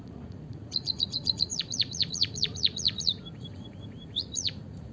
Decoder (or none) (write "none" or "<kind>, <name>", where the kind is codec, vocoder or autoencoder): vocoder, Vocos